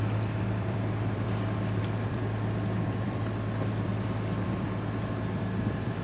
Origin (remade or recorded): remade